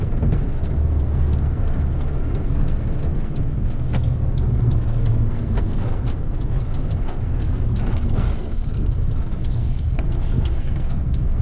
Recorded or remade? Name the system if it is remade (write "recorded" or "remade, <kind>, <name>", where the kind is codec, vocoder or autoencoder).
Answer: remade, codec, SNAC